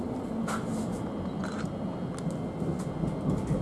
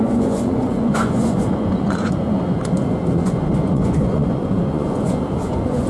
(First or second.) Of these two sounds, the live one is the first